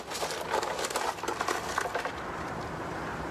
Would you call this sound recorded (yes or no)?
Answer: no